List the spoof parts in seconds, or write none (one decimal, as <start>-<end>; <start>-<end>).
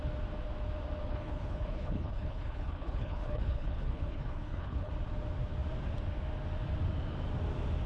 1.1-4.9